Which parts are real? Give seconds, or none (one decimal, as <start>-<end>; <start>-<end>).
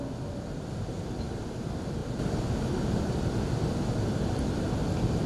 0.0-5.3